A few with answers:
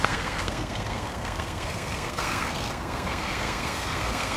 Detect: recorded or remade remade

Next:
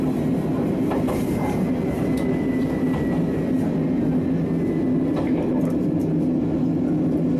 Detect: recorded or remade recorded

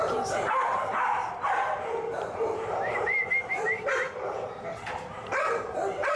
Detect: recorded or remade remade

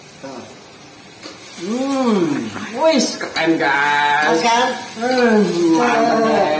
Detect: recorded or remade recorded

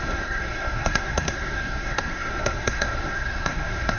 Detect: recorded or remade remade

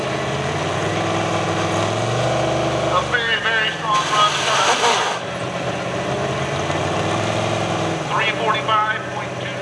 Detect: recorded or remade recorded